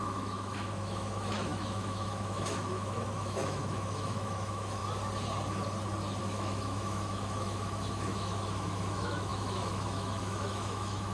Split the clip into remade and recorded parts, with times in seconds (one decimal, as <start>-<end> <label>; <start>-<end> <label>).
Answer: 0.0-4.8 remade; 4.8-6.2 recorded; 6.2-11.1 remade